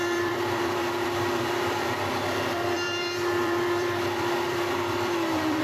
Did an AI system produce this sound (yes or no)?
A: yes